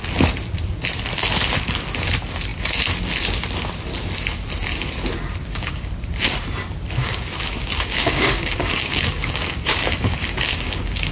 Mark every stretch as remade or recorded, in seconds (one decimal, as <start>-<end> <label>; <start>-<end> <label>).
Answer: 0.0-5.4 recorded; 5.4-5.9 remade; 5.9-7.0 recorded; 7.0-11.1 remade